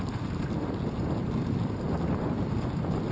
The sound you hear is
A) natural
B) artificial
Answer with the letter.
A